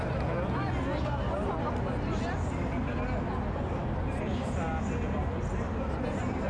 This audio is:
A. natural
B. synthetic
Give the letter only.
A